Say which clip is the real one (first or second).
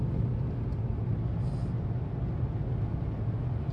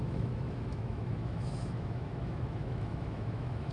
first